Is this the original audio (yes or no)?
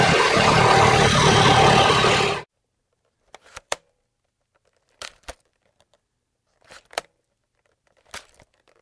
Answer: no